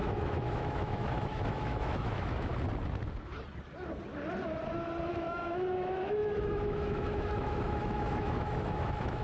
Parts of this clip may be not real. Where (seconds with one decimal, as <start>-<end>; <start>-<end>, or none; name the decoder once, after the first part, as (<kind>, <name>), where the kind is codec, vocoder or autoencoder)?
0.0-2.5 (autoencoder, DAC-VAE); 5.1-9.2